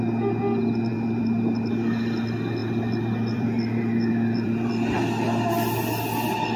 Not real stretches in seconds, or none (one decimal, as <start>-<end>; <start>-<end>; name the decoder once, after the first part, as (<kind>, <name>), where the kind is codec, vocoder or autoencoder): 0.9-1.7 (vocoder, BigVGAN v2); 2.6-4.7

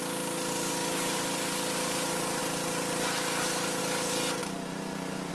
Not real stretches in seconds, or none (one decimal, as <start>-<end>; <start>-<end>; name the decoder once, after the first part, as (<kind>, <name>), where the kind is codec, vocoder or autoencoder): 0.8-1.5 (vocoder, BigVGAN v2); 4.4-5.3

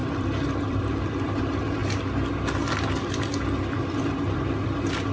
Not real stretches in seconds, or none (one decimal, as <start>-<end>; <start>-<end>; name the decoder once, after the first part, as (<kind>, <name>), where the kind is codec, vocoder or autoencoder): 0.0-1.8 (vocoder, BigVGAN v2); 2.7-5.1

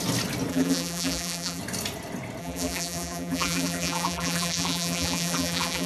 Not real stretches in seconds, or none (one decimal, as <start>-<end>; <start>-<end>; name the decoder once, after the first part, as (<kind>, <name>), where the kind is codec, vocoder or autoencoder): 0.5-1.6 (vocoder, BigVGAN v2); 2.4-5.9

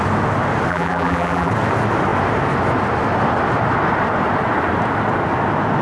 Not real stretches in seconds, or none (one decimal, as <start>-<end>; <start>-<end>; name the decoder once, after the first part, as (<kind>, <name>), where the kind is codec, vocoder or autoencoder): 0.7-1.5 (vocoder, BigVGAN v2)

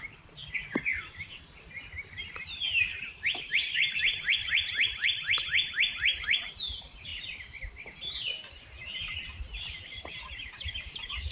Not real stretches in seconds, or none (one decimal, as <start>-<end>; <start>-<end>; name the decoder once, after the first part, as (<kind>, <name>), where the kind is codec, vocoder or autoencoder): 0.0-0.4 (vocoder, BigVGAN v2); 2.1-7.1; 9.8-11.3